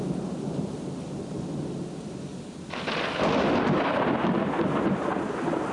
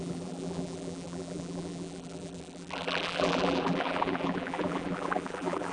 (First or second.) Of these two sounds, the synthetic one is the second